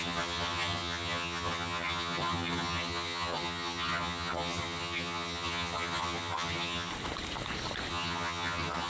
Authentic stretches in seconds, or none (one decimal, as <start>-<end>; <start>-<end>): 6.9-7.9